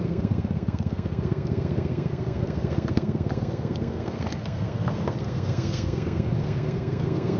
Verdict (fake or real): fake